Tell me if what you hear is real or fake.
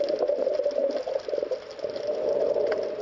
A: real